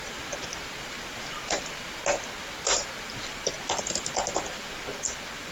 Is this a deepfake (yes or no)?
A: no